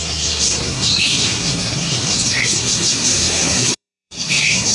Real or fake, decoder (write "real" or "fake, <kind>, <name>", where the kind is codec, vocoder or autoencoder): fake, codec, SNAC